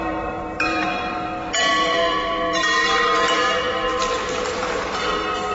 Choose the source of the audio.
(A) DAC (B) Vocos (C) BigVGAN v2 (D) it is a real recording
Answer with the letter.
C